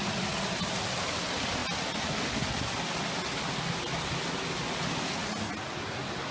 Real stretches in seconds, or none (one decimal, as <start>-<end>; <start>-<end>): 0.0-6.3